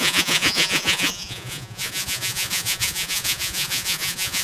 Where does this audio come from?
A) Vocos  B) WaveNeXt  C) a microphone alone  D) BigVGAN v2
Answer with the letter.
A